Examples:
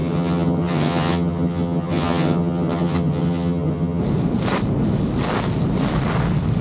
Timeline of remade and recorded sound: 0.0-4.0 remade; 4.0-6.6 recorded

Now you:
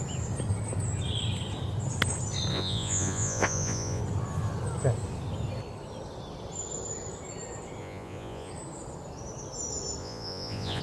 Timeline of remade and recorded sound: 0.0-2.5 recorded; 2.5-4.0 remade; 4.0-7.8 recorded; 7.8-8.5 remade; 8.5-10.0 recorded; 10.0-10.8 remade

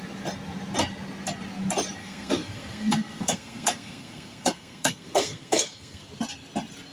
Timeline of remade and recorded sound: 0.0-2.0 recorded; 2.0-6.1 remade; 6.1-6.9 recorded

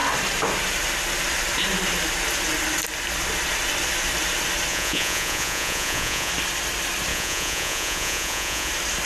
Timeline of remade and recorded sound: 0.0-4.7 recorded; 4.7-6.3 remade; 6.3-7.1 recorded; 7.1-8.7 remade; 8.7-9.1 recorded

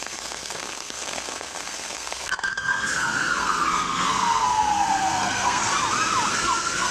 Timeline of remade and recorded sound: 0.0-5.7 remade; 5.7-6.3 recorded; 6.3-6.9 remade

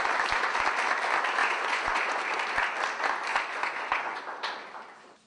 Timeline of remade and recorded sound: 0.0-1.4 recorded; 1.4-2.2 remade; 2.2-3.3 recorded; 3.3-4.2 remade; 4.2-5.3 recorded